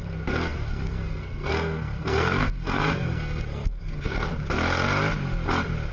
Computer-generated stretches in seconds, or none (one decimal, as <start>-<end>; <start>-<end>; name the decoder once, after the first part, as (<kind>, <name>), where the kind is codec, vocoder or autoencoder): 0.0-4.3 (codec, SNAC)